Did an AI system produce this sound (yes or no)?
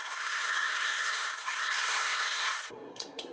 yes